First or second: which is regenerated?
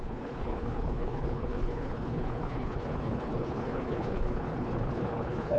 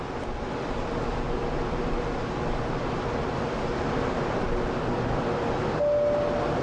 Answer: first